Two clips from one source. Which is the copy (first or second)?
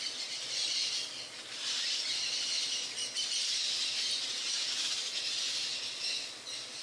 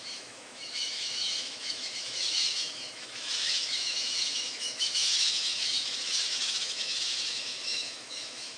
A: second